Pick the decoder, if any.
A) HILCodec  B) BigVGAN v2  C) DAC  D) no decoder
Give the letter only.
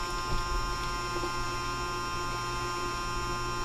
D